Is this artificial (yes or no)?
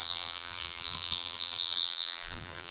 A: yes